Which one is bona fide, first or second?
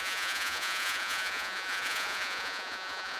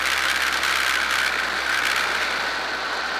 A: second